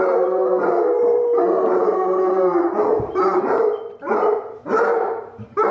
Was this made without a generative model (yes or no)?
no